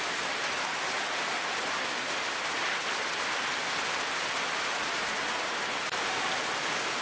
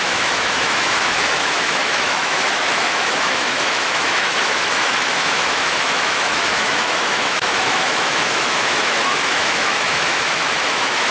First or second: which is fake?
second